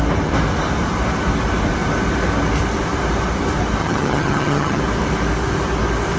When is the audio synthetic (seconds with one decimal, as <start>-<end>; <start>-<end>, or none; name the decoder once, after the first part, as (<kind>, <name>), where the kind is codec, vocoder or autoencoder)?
3.8-4.8 (vocoder, HiFi-GAN)